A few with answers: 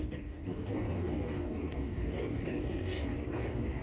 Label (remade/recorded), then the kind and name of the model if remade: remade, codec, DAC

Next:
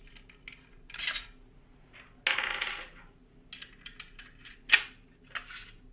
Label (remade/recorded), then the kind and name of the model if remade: recorded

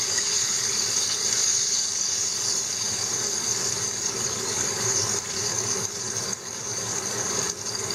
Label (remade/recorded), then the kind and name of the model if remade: remade, codec, DAC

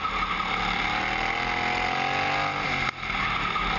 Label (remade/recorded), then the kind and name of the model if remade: recorded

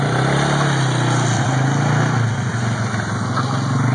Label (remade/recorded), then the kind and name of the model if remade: recorded